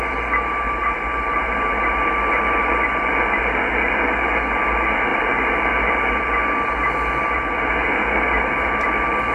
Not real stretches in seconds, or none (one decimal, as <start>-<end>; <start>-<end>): none